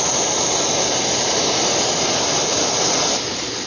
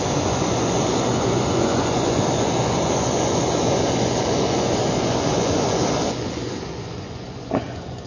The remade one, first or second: second